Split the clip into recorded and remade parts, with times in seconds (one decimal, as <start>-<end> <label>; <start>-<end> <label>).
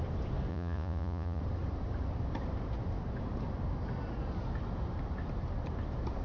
0.0-0.5 recorded; 0.5-1.4 remade; 1.4-6.2 recorded